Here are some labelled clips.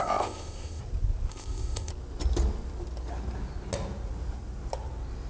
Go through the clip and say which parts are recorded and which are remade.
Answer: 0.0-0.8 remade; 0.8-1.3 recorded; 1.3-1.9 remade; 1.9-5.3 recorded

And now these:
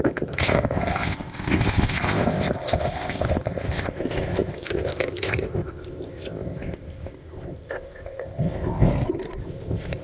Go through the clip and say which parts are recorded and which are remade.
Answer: 0.0-8.9 remade; 8.9-9.4 recorded; 9.4-10.0 remade

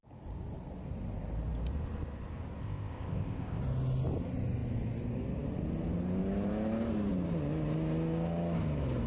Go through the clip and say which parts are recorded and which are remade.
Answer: 0.0-2.6 recorded; 2.6-3.6 remade; 3.6-9.1 recorded